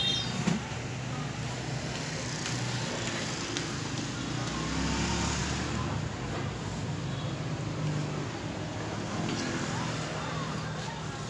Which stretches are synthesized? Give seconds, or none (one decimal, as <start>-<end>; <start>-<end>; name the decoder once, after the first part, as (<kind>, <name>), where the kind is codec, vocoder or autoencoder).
none